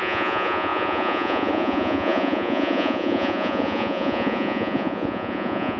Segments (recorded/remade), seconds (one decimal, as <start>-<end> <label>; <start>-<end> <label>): 0.0-5.8 remade